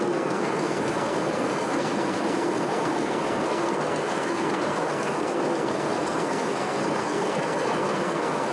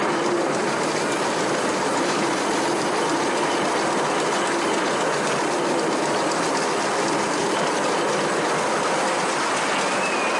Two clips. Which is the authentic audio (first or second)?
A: second